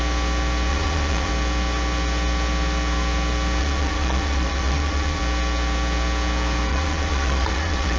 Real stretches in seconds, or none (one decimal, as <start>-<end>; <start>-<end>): 0.0-0.7; 1.3-3.6; 5.2-6.7